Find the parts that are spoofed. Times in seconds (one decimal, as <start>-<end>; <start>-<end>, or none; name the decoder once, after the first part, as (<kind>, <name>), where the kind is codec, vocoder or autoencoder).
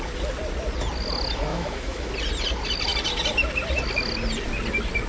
1.5-2.1 (autoencoder, DAC-VAE)